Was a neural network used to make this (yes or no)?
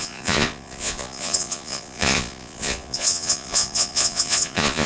yes